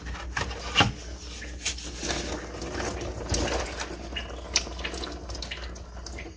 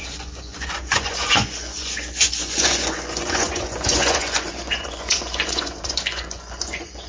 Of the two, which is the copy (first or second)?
second